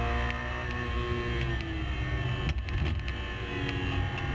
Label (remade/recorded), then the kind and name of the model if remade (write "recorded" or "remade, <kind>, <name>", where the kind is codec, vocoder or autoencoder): recorded